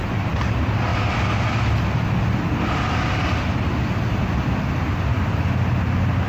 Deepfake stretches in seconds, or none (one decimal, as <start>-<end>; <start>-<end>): none